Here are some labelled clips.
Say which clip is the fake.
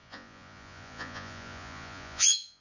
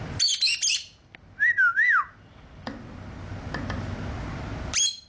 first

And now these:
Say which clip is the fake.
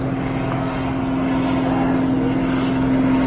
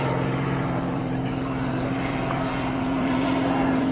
second